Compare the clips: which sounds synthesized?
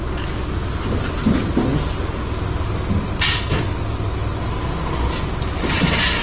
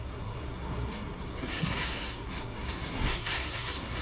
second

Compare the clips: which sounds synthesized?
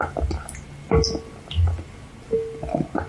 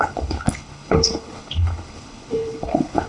second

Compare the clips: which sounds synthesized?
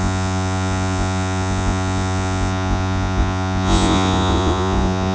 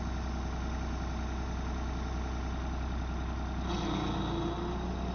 first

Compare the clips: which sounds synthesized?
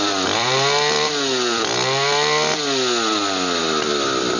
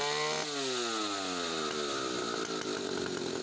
first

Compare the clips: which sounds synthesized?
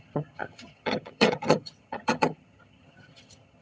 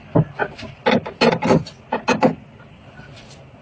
first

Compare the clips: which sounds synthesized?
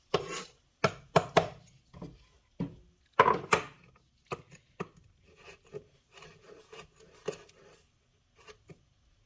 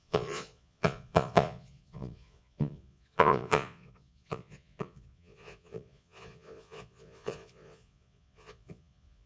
second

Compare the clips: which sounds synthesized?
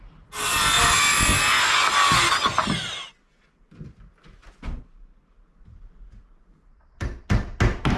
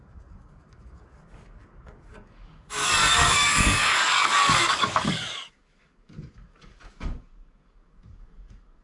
second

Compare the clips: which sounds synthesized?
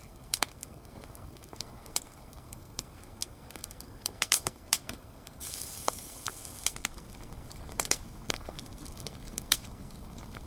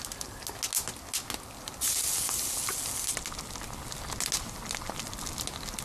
first